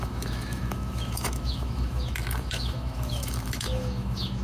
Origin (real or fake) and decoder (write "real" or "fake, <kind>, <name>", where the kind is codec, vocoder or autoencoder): fake, autoencoder, DAC-VAE